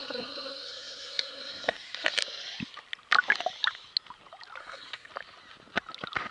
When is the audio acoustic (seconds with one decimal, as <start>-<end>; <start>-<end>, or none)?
2.2-4.6; 5.1-6.3